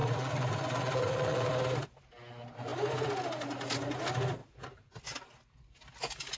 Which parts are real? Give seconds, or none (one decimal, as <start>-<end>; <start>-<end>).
1.5-4.4; 5.0-6.4